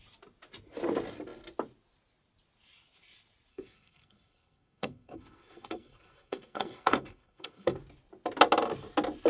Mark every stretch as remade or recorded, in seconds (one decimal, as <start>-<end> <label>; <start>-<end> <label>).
0.0-3.5 recorded; 3.5-7.8 remade; 7.8-9.3 recorded